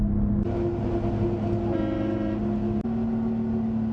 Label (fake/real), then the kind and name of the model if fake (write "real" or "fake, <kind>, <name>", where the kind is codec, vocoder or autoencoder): real